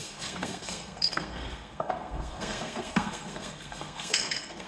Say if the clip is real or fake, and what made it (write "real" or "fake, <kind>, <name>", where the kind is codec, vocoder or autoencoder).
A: fake, codec, SNAC